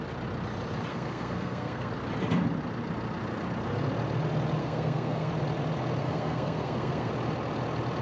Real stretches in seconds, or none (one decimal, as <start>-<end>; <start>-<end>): 0.0-0.9; 1.9-4.6; 5.3-6.0; 7.1-8.0